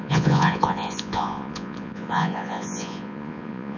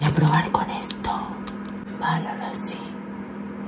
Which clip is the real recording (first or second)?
second